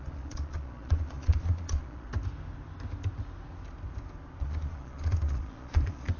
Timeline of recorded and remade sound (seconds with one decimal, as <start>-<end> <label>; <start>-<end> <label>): 0.0-2.1 remade; 2.1-4.4 recorded; 4.4-6.2 remade